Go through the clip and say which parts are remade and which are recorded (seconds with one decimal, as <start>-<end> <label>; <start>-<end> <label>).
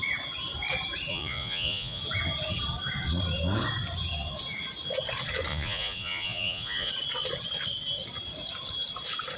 0.0-1.1 recorded; 1.1-2.0 remade; 2.0-5.5 recorded; 5.5-6.9 remade; 6.9-9.4 recorded